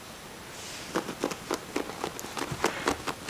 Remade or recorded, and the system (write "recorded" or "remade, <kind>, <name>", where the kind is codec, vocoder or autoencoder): recorded